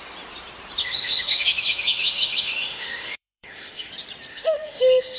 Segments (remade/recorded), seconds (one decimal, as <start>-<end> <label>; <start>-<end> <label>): 0.0-0.8 recorded; 0.8-3.9 remade; 3.9-4.3 recorded; 4.3-5.2 remade